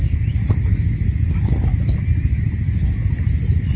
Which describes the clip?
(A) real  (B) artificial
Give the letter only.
A